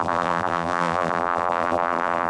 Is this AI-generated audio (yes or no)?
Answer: yes